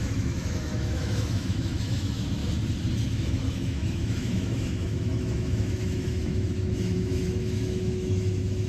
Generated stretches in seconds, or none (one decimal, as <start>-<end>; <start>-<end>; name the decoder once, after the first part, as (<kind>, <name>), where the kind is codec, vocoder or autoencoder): 0.0-2.4 (autoencoder, DAC-VAE); 3.0-8.7